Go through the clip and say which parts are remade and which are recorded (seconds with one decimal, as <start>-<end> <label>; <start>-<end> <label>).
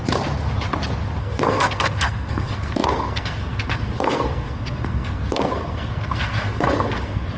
0.0-1.2 recorded; 1.2-7.4 remade